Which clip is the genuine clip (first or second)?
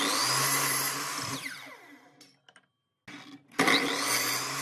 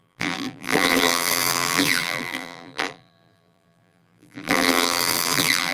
first